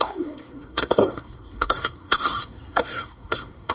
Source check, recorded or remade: remade